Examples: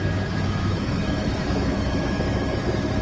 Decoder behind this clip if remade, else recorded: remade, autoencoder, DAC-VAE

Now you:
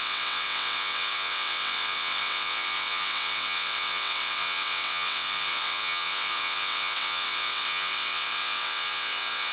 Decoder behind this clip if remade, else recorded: remade, vocoder, WaveNeXt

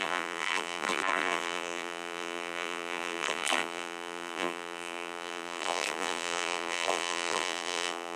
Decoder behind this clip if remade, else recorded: remade, vocoder, BigVGAN v2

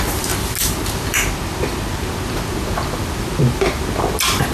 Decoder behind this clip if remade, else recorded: recorded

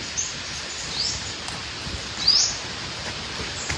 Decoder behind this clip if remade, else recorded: recorded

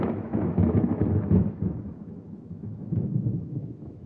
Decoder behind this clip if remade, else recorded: remade, autoencoder, DAC-VAE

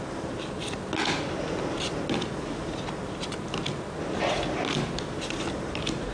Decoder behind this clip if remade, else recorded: recorded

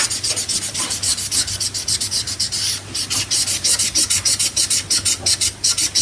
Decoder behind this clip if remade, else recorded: recorded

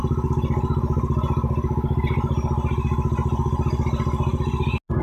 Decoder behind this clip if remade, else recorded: recorded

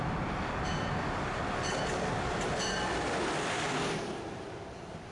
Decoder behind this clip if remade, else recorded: recorded